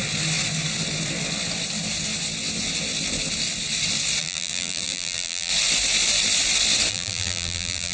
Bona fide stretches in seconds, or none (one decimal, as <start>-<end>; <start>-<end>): 0.0-4.2; 5.5-6.9